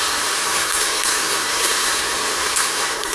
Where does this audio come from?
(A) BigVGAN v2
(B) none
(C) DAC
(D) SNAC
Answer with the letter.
D